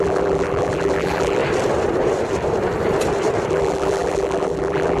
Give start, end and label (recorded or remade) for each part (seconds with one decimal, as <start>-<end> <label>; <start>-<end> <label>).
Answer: 0.0-1.4 remade; 1.4-3.5 recorded; 3.5-5.0 remade

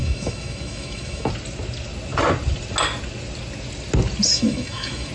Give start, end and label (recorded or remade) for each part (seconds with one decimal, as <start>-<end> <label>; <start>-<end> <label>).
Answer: 0.0-1.3 remade; 1.3-4.3 recorded; 4.3-5.1 remade

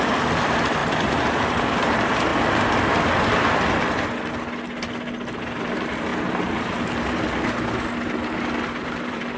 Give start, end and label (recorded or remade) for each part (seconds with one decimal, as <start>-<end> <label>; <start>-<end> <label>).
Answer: 0.0-2.3 remade; 2.3-5.4 recorded; 5.4-6.1 remade; 6.1-8.8 recorded; 8.8-9.4 remade

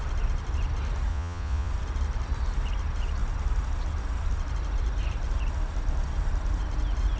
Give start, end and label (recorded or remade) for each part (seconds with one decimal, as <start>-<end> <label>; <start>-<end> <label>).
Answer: 0.0-1.1 recorded; 1.1-1.7 remade; 1.7-7.2 recorded

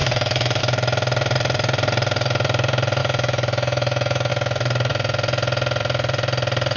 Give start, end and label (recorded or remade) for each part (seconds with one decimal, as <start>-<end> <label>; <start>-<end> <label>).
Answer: 0.0-0.6 remade; 0.6-3.0 recorded; 3.0-4.3 remade; 4.3-6.8 recorded

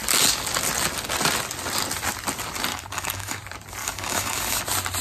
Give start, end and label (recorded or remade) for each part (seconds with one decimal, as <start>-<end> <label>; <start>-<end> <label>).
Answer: 0.0-2.7 recorded; 2.7-3.4 remade; 3.4-3.8 recorded; 3.8-4.6 remade; 4.6-5.0 recorded

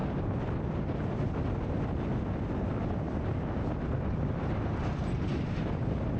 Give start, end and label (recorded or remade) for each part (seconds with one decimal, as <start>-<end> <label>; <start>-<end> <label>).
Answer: 0.0-6.2 recorded